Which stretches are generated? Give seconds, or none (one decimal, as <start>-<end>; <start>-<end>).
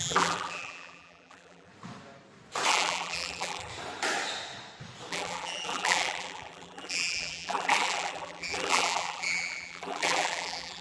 0.0-1.7; 2.7-3.7; 5.1-10.8